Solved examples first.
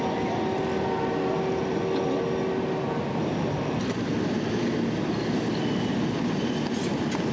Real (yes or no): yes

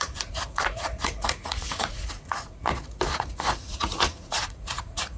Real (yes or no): no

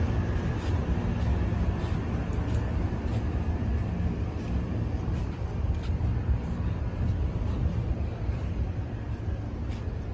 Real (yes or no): no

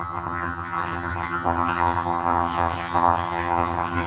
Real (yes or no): no